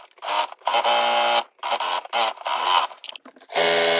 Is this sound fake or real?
real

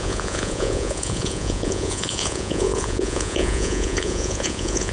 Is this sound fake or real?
fake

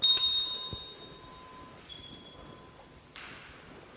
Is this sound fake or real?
real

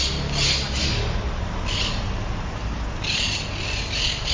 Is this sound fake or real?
real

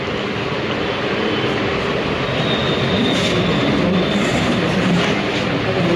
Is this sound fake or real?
real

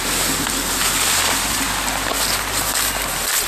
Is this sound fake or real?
real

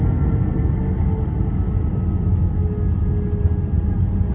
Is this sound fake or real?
real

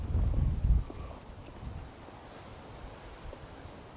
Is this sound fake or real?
real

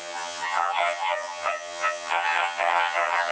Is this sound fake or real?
fake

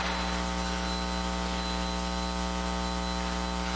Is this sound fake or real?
real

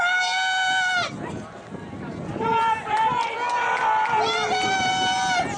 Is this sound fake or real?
real